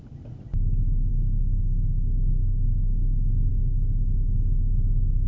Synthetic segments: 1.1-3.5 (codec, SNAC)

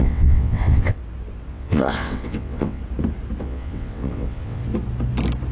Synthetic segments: 0.0-1.0 (vocoder, WaveNeXt); 1.5-2.8; 3.4-4.6

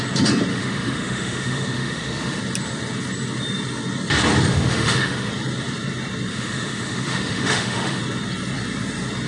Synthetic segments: 0.5-2.4 (autoencoder, DAC-VAE); 4.5-5.3; 6.3-8.0

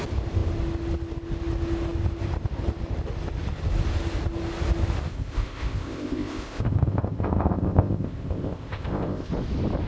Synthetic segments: 5.1-9.3 (codec, ZipCodec)

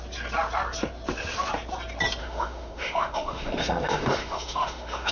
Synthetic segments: 2.2-5.1 (autoencoder, DAC-VAE)

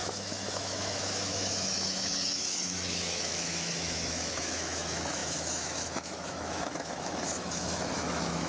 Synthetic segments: 0.0-8.5 (autoencoder, DAC-VAE)